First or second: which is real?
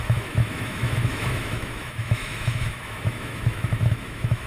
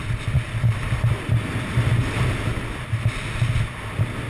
second